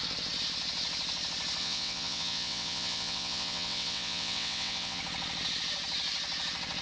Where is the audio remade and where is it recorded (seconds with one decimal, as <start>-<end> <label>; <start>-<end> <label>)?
0.0-1.6 recorded; 1.6-5.0 remade; 5.0-6.8 recorded